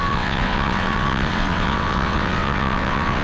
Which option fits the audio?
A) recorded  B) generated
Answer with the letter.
B